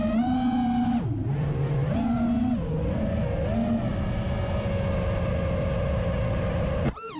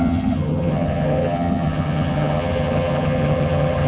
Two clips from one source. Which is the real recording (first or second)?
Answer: first